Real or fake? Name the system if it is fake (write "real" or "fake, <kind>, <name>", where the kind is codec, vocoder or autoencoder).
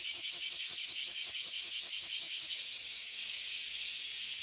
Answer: fake, codec, DAC